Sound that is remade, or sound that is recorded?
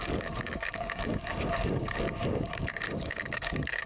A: remade